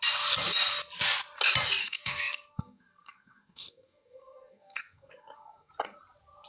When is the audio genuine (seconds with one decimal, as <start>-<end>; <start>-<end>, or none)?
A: 0.0-1.8; 5.7-6.5